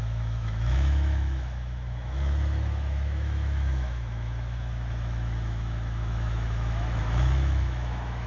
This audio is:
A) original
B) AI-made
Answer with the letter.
B